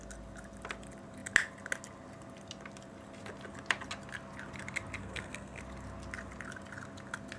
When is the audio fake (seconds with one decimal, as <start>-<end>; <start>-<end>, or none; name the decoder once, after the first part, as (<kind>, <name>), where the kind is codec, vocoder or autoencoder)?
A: 5.0-5.6 (codec, SNAC)

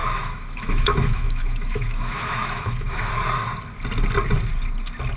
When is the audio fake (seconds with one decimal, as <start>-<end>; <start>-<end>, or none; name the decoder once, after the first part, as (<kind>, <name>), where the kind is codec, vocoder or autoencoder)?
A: 0.0-3.1 (autoencoder, DAC-VAE)

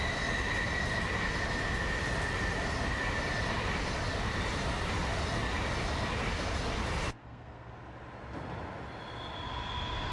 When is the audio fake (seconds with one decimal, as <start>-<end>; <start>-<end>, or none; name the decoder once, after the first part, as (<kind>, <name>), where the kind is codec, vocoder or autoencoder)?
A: 7.2-7.7 (codec, SNAC)

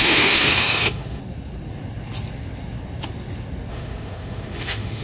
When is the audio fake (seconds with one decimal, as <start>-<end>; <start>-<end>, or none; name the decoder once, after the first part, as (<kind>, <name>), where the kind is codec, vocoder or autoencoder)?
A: 0.0-1.2 (autoencoder, DAC-VAE); 3.7-5.0